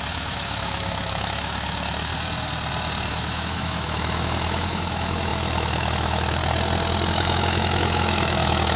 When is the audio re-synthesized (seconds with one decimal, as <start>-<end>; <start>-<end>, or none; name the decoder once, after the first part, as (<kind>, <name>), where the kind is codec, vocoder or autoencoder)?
0.0-2.1 (autoencoder, DAC-VAE); 3.1-6.4; 7.1-8.8